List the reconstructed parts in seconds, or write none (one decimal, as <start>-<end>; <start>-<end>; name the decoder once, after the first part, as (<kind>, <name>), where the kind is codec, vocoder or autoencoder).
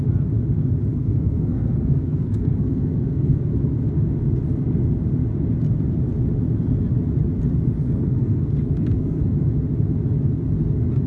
0.9-3.5 (codec, SNAC); 7.8-9.2